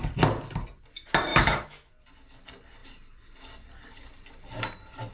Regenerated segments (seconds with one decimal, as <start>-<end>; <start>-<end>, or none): 1.3-1.9